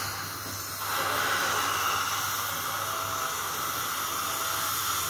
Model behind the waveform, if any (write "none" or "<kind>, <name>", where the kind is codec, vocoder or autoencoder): none